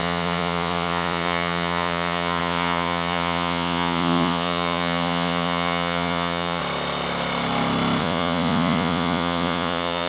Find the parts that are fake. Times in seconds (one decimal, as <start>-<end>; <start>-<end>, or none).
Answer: 0.0-6.6; 8.0-10.1